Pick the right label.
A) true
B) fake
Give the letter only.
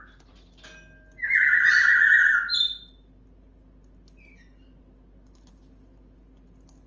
A